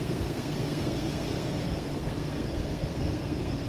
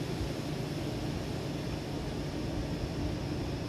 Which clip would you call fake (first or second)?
first